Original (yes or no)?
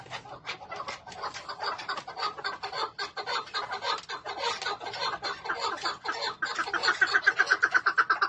yes